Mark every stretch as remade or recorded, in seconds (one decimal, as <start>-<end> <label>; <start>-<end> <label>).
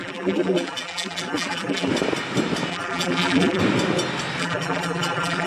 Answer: 0.0-1.9 remade; 1.9-2.7 recorded; 2.7-3.6 remade; 3.6-4.4 recorded; 4.4-5.5 remade